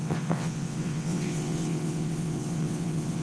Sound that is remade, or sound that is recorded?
remade